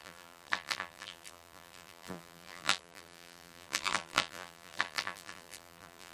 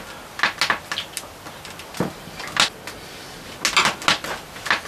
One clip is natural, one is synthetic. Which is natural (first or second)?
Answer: second